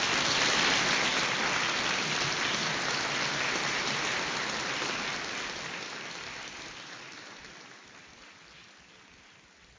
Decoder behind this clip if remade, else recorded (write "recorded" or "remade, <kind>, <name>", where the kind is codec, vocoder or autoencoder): recorded